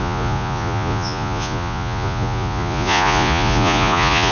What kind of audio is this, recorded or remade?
remade